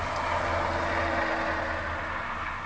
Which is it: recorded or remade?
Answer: recorded